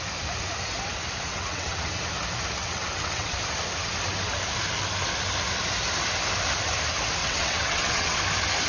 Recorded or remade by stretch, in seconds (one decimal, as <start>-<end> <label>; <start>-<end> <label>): 0.0-1.3 recorded; 1.3-2.0 remade; 2.0-2.6 recorded; 2.6-3.4 remade; 3.4-7.2 recorded; 7.2-8.2 remade; 8.2-8.7 recorded